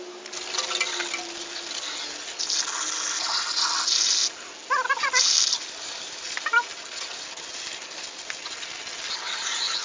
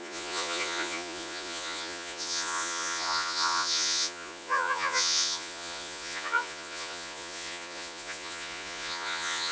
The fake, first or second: second